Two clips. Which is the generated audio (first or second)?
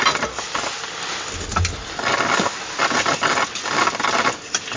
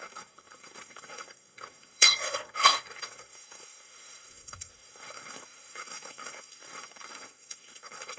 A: second